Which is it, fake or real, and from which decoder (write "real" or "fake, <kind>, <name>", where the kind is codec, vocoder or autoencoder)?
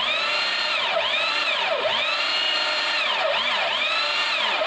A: real